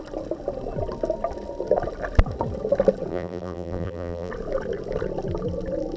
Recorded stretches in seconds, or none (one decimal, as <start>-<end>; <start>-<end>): 0.0-3.1; 4.3-6.0